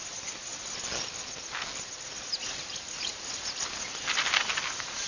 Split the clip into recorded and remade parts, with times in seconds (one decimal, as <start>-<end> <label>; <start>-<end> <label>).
0.0-5.1 recorded